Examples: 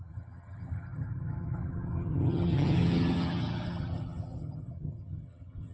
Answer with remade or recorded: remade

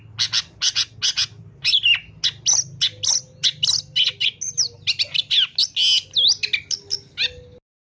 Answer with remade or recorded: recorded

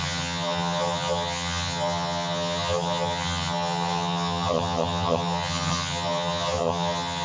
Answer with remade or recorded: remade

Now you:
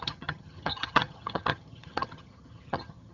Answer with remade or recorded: remade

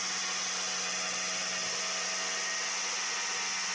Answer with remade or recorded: recorded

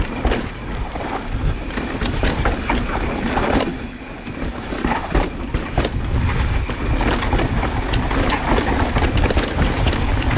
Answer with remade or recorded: recorded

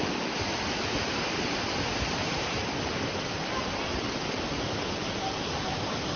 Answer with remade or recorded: recorded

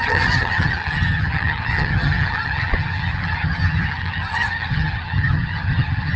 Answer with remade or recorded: remade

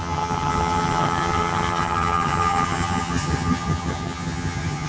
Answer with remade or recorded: remade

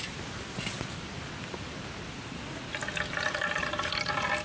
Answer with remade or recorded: recorded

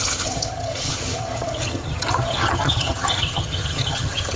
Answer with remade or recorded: remade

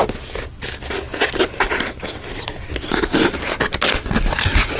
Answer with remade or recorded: recorded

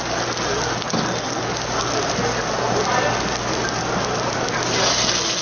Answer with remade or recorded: recorded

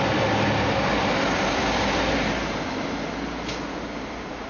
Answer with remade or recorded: recorded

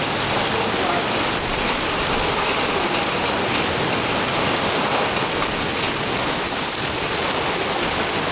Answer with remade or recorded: recorded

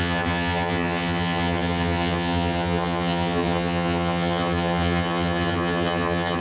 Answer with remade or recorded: remade